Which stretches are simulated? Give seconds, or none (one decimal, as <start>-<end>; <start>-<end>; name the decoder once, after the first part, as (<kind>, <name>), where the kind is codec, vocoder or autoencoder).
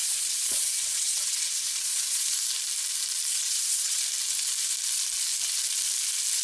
0.0-2.2 (vocoder, Vocos); 3.3-4.0